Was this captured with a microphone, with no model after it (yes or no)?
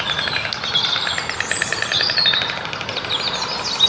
yes